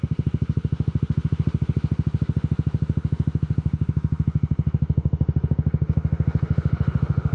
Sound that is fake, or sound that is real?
fake